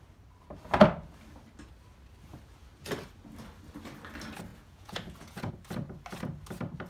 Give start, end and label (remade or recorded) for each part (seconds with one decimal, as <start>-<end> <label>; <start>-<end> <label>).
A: 0.0-4.5 recorded; 4.5-5.5 remade; 5.5-6.9 recorded